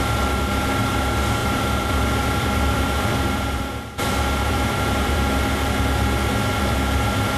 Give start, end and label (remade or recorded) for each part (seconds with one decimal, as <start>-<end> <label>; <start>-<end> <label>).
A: 0.0-1.4 recorded; 1.4-5.4 remade; 5.4-7.4 recorded